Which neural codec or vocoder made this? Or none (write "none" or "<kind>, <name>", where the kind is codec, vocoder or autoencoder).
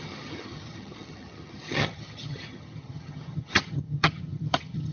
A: vocoder, HiFi-GAN